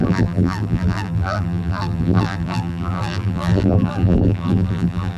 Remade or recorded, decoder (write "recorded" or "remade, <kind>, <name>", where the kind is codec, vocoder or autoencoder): remade, vocoder, BigVGAN v2